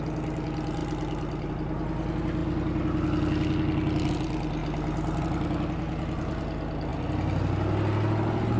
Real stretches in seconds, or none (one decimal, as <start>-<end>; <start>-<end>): 0.0-8.6

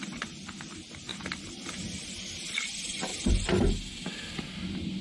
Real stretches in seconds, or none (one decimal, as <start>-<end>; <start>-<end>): 0.0-1.1; 2.1-3.1

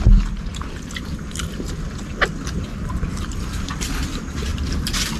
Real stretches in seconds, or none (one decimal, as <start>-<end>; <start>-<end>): 0.0-0.5; 1.7-5.2

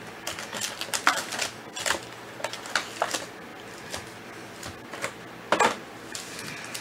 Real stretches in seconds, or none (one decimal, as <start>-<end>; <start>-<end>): 0.0-3.5; 4.5-6.8

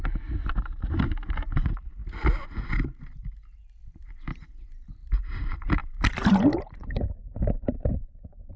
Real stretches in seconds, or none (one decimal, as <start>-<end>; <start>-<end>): 2.0-4.9